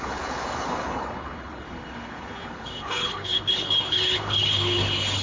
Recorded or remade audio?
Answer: remade